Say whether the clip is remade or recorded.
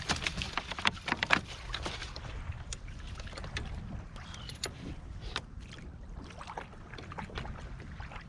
remade